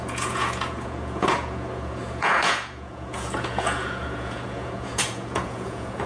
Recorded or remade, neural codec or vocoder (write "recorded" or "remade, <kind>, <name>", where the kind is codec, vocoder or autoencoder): remade, vocoder, Vocos